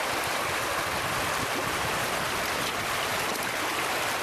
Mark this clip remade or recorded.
recorded